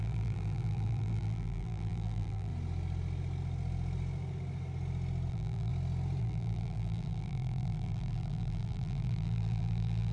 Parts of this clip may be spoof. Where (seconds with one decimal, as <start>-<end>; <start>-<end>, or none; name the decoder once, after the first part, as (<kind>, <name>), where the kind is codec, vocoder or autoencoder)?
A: 0.0-2.5 (vocoder, BigVGAN v2); 5.3-5.7; 6.2-10.1